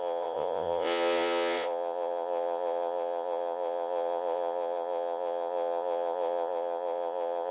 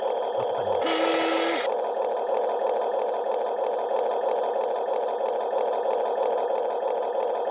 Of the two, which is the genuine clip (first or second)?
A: second